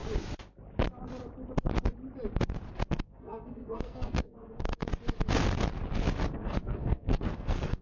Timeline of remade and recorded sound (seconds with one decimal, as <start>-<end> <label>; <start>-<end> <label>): 0.0-2.9 recorded; 2.9-4.8 remade; 4.8-6.3 recorded; 6.3-7.8 remade